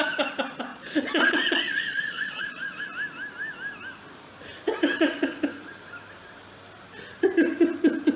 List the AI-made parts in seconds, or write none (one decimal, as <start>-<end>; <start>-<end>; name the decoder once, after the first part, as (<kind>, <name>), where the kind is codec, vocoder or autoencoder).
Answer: 0.7-2.8 (vocoder, Vocos); 4.9-5.4